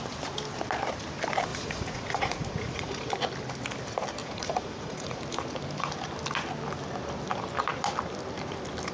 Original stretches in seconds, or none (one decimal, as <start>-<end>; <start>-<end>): 0.0-1.5; 3.1-4.2; 5.2-8.9

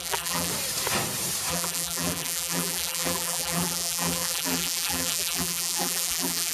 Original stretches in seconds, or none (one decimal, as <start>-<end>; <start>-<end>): 0.5-1.5

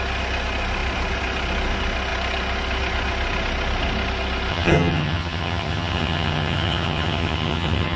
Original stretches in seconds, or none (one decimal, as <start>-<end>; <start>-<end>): 0.0-4.5

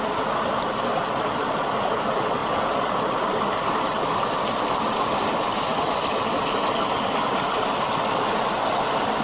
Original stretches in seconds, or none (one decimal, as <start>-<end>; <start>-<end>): 0.0-2.4; 3.1-9.2

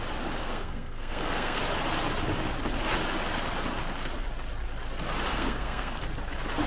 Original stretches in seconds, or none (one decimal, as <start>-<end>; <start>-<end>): 0.0-0.4; 1.6-5.3; 6.0-6.7

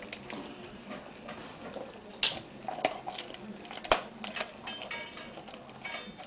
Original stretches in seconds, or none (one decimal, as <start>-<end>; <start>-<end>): 0.0-6.3